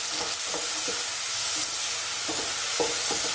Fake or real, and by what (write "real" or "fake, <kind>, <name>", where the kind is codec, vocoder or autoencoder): real